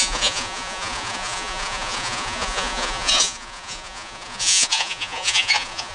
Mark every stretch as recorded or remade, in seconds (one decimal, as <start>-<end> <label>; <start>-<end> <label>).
0.0-5.9 remade